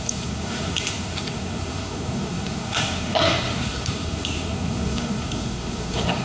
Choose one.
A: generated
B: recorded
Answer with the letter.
A